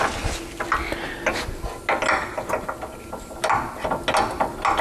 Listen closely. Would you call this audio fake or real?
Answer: real